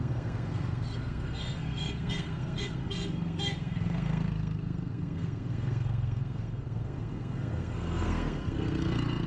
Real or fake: fake